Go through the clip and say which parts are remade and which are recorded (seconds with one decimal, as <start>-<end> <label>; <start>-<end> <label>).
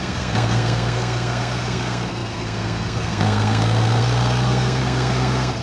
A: 0.0-5.6 remade